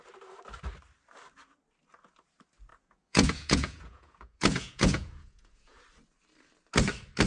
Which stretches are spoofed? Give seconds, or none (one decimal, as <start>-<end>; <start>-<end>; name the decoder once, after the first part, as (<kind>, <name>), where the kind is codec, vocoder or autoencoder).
2.7-5.8 (vocoder, Vocos)